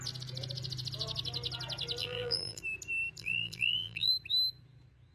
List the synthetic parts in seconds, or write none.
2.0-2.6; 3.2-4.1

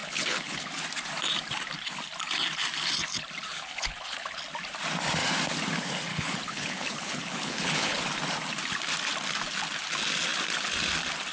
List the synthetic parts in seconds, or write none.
0.0-0.7; 3.5-4.4; 6.1-8.0

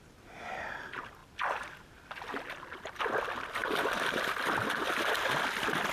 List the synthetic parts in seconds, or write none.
3.6-5.9

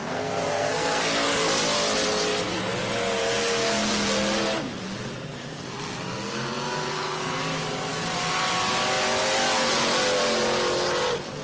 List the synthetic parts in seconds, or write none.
0.0-1.0; 6.9-7.4

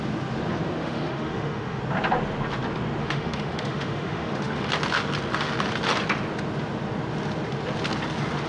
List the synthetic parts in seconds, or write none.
0.8-1.8; 3.0-4.7

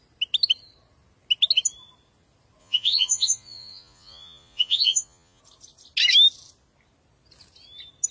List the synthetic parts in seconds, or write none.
2.6-5.4